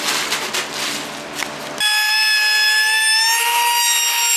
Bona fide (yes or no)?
yes